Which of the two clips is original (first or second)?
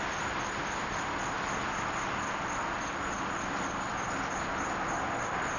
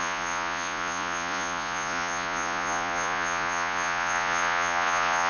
first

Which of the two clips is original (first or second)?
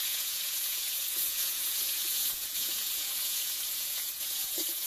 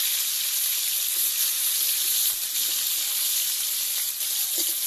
second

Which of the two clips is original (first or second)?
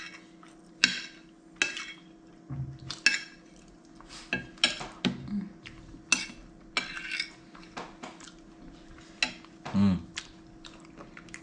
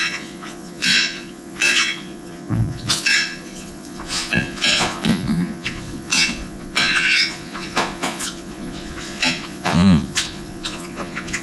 first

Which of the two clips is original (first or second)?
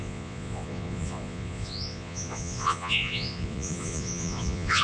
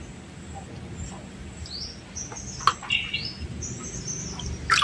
second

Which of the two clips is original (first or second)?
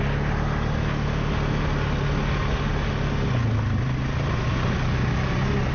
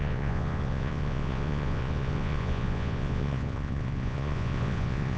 first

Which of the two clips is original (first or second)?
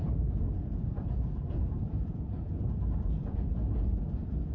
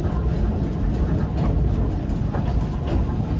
second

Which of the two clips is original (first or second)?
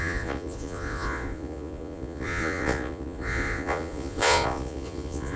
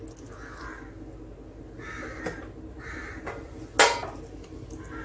second